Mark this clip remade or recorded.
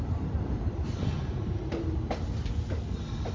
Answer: recorded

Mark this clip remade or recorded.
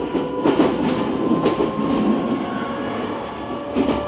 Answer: recorded